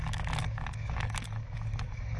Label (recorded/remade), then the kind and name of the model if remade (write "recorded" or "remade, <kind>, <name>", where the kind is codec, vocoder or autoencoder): remade, codec, DAC